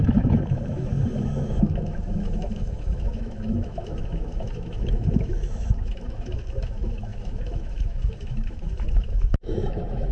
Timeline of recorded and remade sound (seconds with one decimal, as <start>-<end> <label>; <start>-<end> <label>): 0.0-10.1 remade